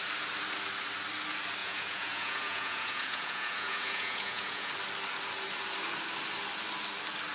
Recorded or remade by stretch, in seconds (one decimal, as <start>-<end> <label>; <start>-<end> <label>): 0.0-1.6 recorded; 1.6-4.7 remade; 4.7-7.3 recorded